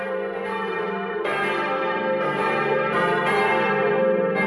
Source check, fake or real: fake